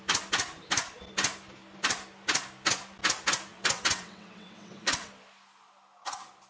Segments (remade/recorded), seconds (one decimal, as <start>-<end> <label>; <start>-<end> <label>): 0.0-3.5 recorded; 3.5-5.1 remade; 5.1-6.5 recorded